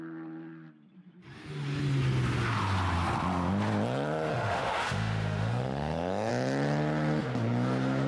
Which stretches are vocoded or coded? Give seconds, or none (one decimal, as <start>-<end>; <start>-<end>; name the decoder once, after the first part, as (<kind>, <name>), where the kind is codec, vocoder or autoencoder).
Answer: 4.3-6.3 (autoencoder, DAC-VAE)